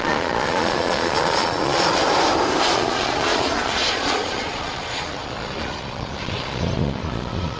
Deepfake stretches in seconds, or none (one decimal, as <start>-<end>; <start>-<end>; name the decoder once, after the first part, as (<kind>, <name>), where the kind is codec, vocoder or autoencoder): 0.0-2.0 (vocoder, Vocos); 2.6-7.6